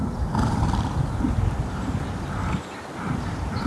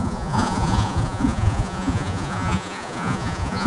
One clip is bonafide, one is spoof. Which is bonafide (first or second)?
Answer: first